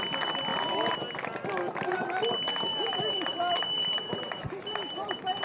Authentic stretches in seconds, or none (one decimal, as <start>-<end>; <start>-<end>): 0.0-2.7